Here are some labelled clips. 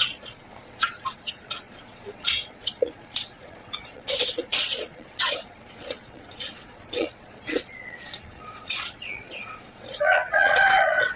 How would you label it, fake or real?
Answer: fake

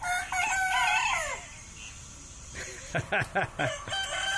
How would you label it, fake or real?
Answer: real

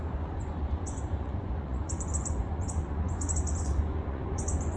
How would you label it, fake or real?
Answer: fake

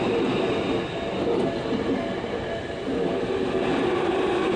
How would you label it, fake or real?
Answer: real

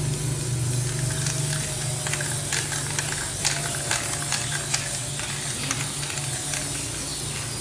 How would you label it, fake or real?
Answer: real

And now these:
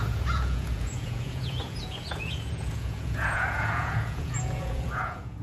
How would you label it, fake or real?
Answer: fake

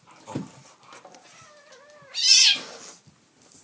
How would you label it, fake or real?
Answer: real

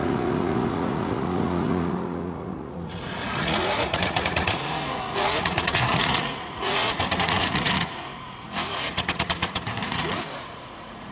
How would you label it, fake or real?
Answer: fake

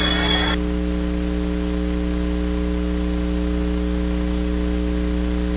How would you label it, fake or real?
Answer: real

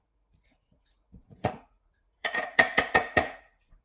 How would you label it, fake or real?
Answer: fake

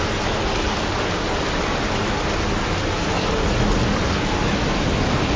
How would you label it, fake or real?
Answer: real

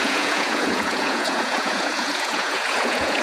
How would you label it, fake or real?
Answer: fake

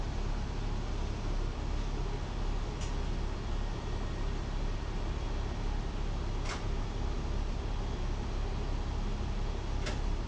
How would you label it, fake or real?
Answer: real